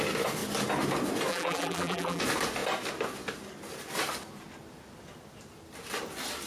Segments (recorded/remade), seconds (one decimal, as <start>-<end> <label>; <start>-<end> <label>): 0.0-1.3 recorded; 1.3-2.2 remade; 2.2-6.5 recorded